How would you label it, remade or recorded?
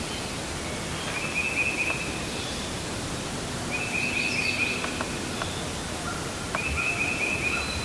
recorded